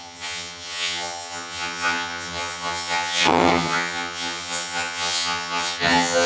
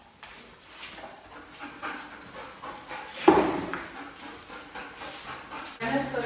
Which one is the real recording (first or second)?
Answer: second